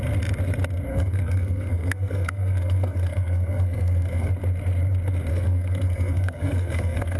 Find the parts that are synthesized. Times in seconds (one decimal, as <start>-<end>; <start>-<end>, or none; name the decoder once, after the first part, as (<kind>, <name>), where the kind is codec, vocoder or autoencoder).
0.9-4.3 (codec, SNAC); 5.3-7.2